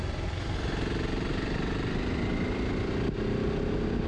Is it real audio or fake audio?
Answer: real